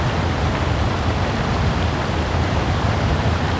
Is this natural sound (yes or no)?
yes